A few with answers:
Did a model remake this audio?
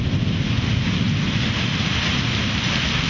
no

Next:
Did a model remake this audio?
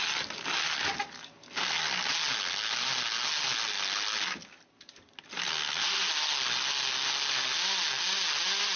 no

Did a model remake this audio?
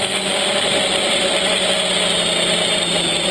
no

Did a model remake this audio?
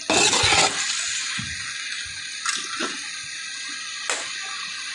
no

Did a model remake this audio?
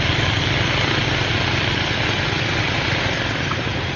no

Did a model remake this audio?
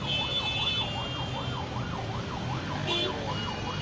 no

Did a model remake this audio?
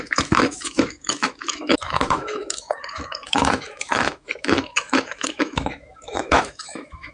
yes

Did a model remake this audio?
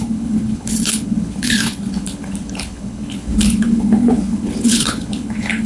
yes